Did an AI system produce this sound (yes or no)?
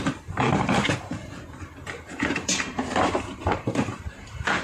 yes